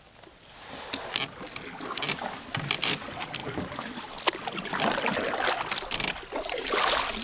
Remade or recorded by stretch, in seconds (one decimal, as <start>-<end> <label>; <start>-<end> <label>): 0.0-3.4 recorded; 3.4-5.4 remade; 5.4-7.2 recorded